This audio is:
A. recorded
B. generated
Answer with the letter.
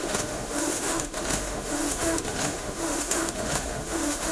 B